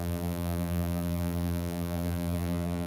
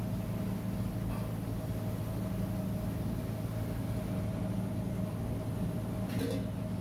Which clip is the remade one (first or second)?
first